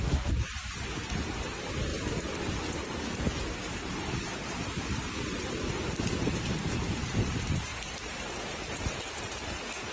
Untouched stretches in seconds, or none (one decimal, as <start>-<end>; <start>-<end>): 0.0-9.9